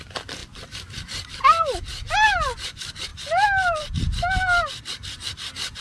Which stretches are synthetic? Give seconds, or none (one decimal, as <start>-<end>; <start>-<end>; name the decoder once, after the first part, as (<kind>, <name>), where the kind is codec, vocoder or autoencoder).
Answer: none